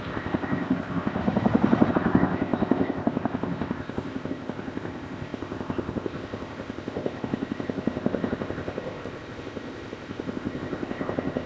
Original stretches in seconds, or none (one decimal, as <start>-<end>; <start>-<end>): 1.2-1.9